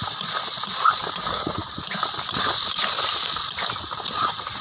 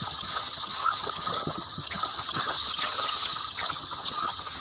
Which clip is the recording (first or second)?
first